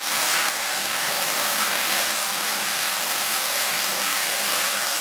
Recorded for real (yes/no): no